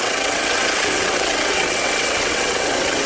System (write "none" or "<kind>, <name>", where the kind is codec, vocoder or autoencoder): vocoder, WaveNeXt